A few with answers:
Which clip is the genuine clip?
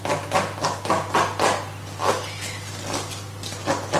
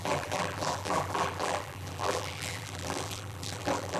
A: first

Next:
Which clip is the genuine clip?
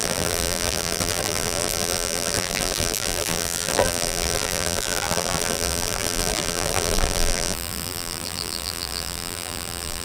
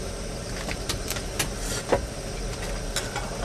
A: second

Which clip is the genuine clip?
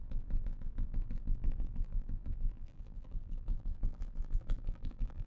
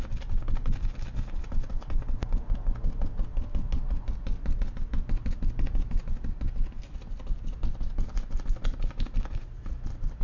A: second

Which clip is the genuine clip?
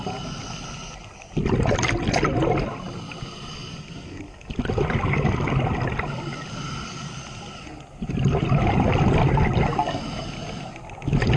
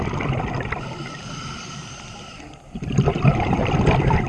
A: first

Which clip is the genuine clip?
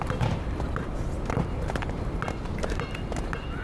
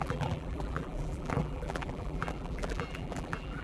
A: first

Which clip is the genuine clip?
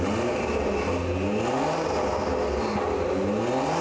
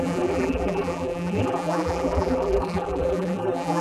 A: first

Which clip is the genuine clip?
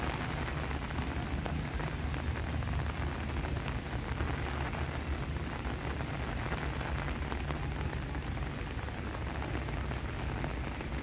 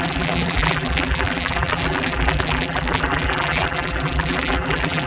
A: first